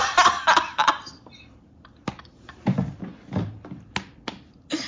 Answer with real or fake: real